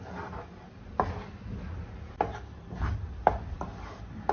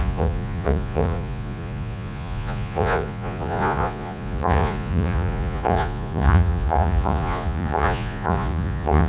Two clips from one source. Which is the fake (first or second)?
second